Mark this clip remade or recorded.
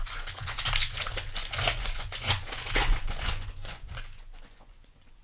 remade